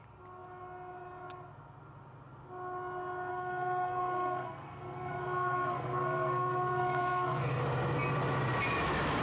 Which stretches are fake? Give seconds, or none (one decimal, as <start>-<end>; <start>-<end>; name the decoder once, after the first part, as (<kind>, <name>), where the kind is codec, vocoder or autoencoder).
3.3-7.6 (codec, SNAC)